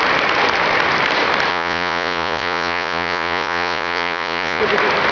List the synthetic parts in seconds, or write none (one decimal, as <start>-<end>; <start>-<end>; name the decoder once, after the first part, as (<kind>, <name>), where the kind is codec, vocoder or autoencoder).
1.5-4.6 (vocoder, Vocos)